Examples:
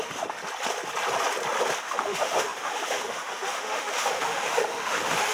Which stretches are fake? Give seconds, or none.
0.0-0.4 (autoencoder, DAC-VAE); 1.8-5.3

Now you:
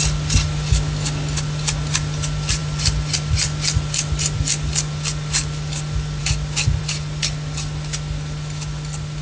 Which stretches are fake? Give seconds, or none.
none

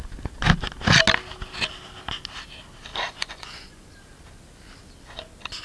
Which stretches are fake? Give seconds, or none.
2.9-3.9 (vocoder, Vocos)

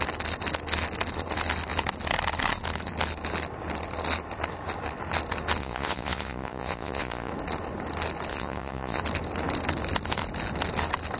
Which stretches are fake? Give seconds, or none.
5.6-7.3 (vocoder, Vocos); 8.3-9.0

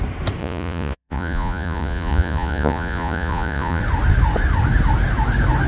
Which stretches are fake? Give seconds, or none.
0.4-3.8 (vocoder, Vocos)